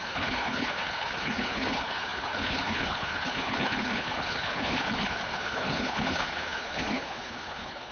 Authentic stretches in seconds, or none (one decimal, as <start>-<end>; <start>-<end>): none

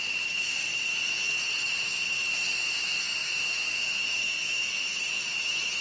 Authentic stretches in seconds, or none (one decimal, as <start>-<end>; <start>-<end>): 1.3-1.8